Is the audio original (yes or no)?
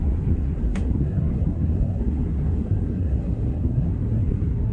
no